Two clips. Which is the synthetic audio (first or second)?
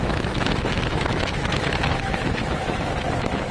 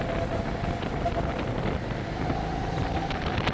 first